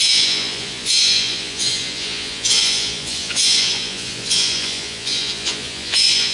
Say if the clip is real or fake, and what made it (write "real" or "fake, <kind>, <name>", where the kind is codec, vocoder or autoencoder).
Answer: fake, vocoder, Vocos